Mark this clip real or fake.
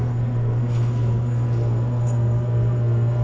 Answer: fake